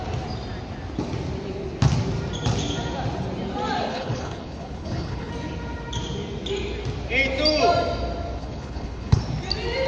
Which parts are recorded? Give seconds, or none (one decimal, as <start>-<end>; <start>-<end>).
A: 0.0-3.9; 5.3-8.4; 9.2-9.9